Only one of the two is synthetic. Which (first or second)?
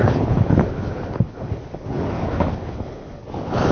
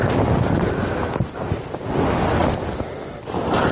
first